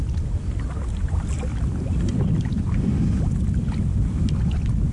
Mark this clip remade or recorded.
recorded